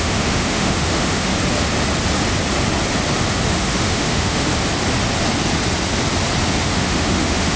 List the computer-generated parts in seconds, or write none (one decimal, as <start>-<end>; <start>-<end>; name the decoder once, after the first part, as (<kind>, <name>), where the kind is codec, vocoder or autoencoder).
0.0-1.3 (autoencoder, DAC-VAE); 3.5-4.5; 6.6-7.6